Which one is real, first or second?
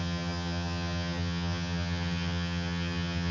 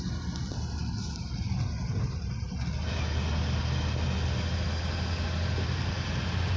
second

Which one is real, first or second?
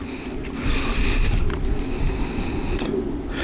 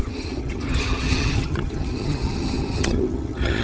first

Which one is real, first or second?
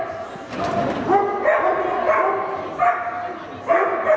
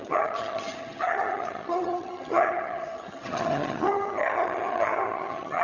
first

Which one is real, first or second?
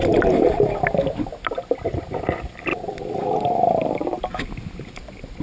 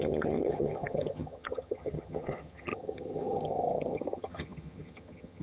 first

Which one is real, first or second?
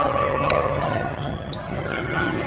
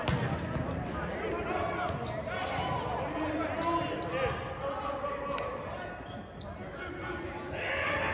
second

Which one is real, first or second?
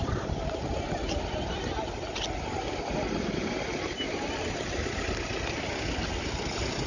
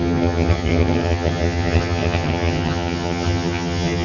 first